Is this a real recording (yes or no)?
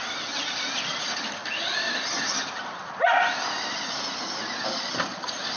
yes